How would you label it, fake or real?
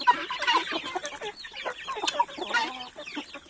real